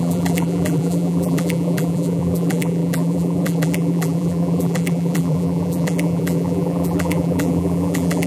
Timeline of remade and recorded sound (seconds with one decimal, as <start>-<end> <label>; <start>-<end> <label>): 0.0-8.3 remade